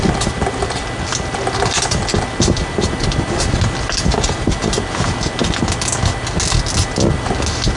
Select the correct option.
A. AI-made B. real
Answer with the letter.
B